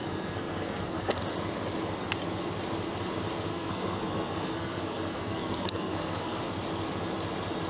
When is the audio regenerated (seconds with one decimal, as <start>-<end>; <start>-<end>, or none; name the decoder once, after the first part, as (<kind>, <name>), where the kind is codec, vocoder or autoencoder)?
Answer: 0.0-1.2 (codec, SNAC); 3.5-6.4